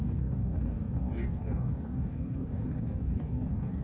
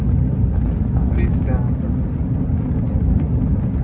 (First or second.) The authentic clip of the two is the second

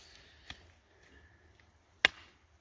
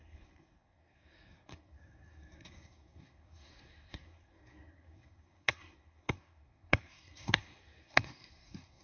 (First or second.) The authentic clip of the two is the first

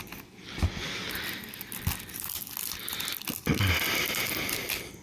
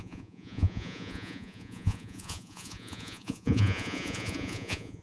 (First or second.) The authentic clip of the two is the first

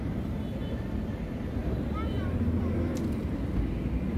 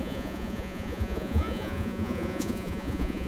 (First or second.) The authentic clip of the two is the first